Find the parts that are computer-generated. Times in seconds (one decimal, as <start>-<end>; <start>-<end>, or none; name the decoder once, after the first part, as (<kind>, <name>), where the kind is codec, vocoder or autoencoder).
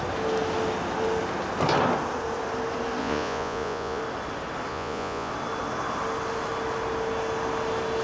3.0-4.0 (vocoder, Vocos); 4.7-5.3